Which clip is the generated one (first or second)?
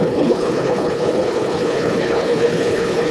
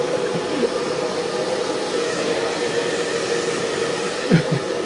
first